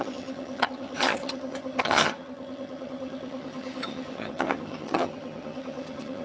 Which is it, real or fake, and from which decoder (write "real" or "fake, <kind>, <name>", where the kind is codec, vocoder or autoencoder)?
fake, vocoder, HiFi-GAN